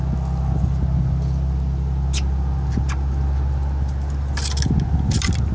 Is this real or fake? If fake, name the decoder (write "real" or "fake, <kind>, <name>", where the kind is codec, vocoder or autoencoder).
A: real